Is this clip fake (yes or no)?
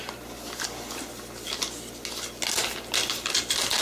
no